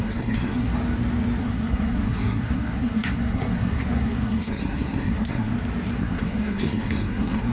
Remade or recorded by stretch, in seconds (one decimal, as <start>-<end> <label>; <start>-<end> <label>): 0.0-0.7 remade; 0.7-1.4 recorded; 1.4-5.5 remade; 5.5-6.0 recorded; 6.0-7.5 remade